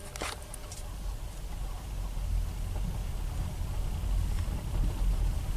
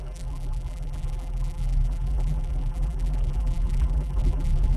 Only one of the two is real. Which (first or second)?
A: first